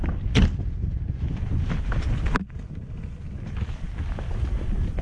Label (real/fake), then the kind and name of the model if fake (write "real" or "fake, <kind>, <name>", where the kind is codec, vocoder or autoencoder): real